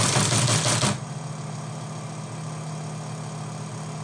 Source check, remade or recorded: recorded